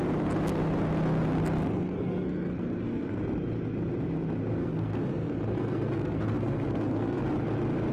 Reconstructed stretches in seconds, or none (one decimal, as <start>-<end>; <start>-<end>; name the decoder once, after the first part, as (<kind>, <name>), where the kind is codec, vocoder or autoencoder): 1.6-3.2 (codec, SNAC); 4.6-7.2